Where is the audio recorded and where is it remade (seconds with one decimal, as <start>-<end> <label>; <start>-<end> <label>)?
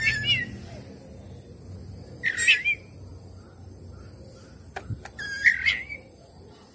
0.0-6.7 recorded